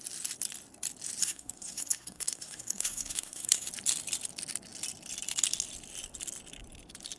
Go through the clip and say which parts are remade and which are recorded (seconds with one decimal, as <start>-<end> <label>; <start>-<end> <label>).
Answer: 0.0-1.2 recorded; 1.2-3.7 remade; 3.7-7.2 recorded